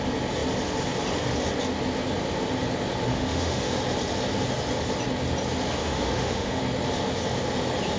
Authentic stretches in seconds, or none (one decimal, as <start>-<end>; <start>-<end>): 0.0-3.1; 3.8-5.8; 6.6-8.0